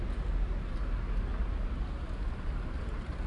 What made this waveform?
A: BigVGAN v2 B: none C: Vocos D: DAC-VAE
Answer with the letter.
B